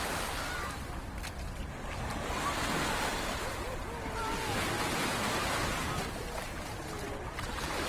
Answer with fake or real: real